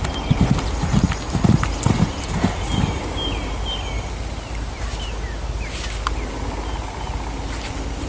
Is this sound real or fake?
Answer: real